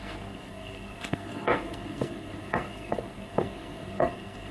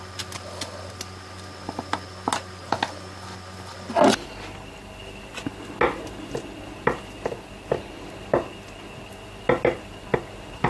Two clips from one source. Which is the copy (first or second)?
first